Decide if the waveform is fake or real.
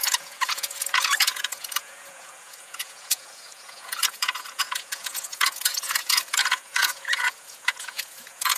fake